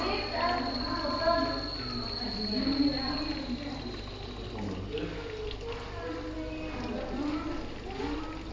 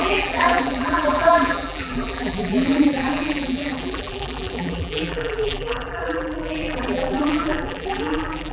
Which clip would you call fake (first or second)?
second